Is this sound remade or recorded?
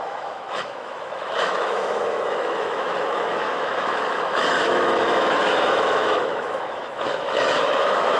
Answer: remade